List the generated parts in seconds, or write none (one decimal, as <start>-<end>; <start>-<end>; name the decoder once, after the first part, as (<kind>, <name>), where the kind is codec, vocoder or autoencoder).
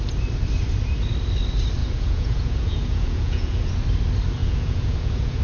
1.8-3.7 (vocoder, Vocos); 4.4-5.4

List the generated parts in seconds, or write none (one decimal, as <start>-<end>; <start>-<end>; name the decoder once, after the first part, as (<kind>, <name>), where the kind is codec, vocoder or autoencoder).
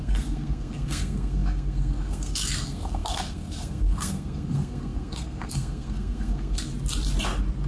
0.0-6.7 (codec, SNAC)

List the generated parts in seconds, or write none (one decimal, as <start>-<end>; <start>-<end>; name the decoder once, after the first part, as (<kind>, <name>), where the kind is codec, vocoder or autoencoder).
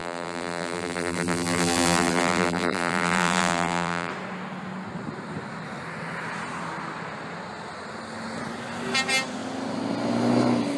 0.0-4.1 (vocoder, BigVGAN v2)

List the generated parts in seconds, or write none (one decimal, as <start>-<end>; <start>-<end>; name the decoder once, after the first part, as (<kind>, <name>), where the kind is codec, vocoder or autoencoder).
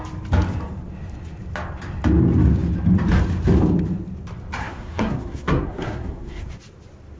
4.6-6.5 (codec, SNAC)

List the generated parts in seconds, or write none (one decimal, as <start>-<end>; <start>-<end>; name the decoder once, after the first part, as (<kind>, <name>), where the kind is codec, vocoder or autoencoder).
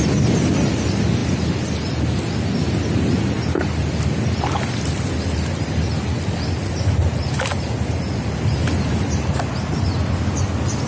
none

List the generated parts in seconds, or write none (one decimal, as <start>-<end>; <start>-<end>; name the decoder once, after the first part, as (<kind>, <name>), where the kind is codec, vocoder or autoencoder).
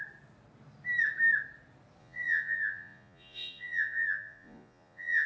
2.0-5.3 (vocoder, Vocos)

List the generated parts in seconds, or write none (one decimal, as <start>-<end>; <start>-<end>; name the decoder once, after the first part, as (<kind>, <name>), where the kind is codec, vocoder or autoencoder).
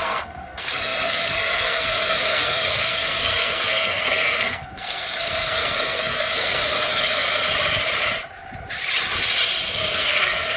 0.0-7.4 (codec, SNAC); 9.7-10.6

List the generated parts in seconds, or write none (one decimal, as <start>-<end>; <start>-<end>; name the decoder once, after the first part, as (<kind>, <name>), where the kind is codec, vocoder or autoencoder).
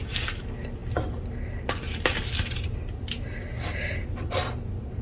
none